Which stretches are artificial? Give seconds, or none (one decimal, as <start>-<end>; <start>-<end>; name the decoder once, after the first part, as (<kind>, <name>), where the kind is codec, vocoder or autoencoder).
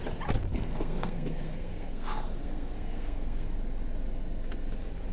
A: 0.5-3.6 (codec, SNAC)